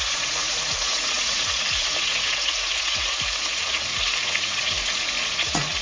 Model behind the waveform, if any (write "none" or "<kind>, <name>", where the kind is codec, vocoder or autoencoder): vocoder, Vocos